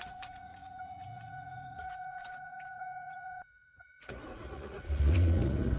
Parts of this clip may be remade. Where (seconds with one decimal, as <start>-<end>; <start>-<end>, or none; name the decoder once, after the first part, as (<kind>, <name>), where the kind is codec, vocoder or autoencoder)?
0.0-5.8 (vocoder, Vocos)